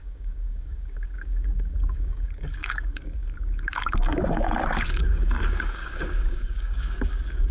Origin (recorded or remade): remade